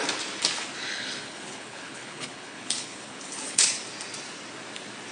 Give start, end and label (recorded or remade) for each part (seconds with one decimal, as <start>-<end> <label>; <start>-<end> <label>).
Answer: 0.0-0.8 recorded; 0.8-3.8 remade; 3.8-5.1 recorded